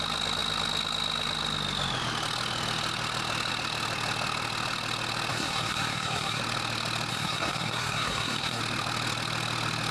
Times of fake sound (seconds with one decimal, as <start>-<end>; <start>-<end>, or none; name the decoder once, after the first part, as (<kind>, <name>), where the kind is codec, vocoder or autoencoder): 5.3-6.4 (codec, SNAC); 7.1-8.6